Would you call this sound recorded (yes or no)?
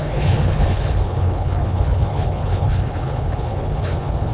no